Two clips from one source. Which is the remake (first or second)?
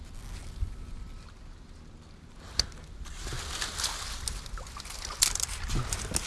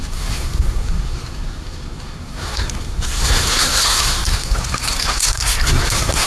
second